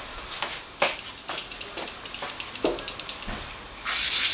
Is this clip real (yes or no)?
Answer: yes